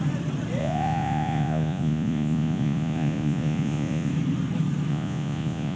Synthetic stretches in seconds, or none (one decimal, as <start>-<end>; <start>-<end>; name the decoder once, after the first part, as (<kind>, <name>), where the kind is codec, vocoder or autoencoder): 0.6-4.1 (vocoder, Vocos); 4.9-5.8